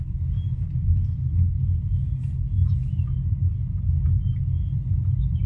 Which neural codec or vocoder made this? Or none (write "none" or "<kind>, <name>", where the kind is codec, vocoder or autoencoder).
none